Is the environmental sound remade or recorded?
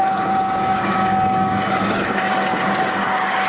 remade